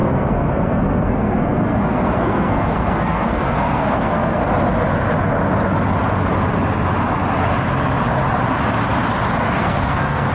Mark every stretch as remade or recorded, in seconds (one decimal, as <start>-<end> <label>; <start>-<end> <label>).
0.0-4.4 remade; 4.4-9.6 recorded; 9.6-10.3 remade